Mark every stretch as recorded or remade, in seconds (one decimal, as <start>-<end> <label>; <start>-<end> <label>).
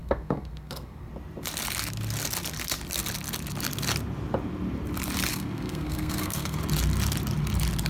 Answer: 0.0-1.1 remade; 1.1-5.3 recorded; 5.3-6.6 remade; 6.6-7.9 recorded